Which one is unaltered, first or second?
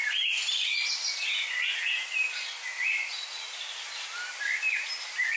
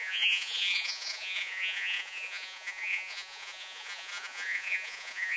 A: first